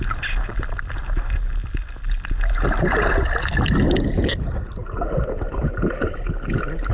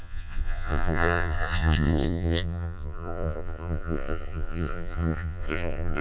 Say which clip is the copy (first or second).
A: second